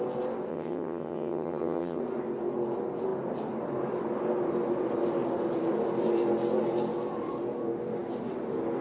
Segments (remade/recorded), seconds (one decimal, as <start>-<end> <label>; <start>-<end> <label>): 0.0-0.5 recorded; 0.5-2.0 remade; 2.0-8.8 recorded